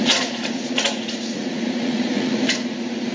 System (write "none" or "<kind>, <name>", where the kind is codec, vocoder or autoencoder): vocoder, Vocos